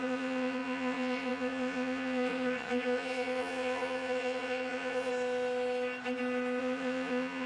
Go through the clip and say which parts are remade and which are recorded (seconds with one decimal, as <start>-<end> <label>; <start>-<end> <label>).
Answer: 0.0-5.1 remade; 5.1-6.6 recorded; 6.6-7.5 remade